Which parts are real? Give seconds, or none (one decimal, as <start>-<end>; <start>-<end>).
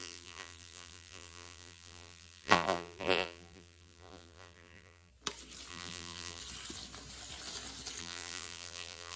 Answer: 5.1-5.7; 6.4-8.0